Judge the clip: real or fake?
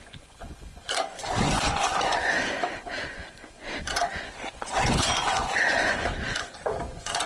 fake